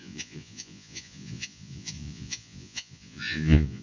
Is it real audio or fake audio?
fake